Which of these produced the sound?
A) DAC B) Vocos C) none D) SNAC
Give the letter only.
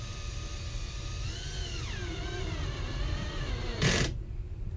C